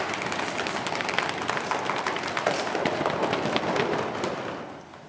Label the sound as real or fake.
real